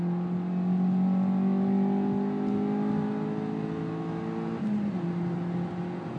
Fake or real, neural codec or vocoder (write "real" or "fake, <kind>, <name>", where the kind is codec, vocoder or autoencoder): real